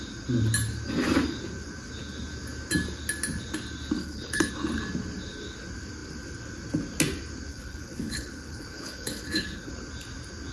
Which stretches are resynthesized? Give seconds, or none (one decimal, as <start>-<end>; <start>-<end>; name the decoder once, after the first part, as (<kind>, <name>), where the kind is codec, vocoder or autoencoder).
4.0-4.5 (codec, HILCodec); 7.5-9.7